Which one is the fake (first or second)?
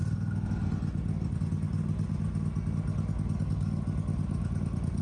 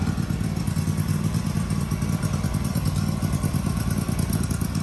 second